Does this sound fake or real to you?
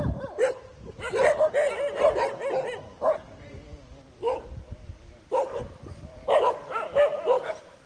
real